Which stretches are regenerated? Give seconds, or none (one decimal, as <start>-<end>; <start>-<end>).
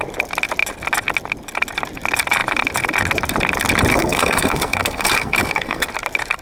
3.9-5.9